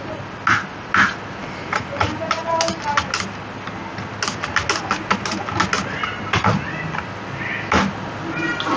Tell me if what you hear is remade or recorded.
recorded